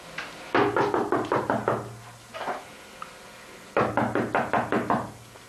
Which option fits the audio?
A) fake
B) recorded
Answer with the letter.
B